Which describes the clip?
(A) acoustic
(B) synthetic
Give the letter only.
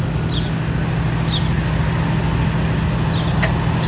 A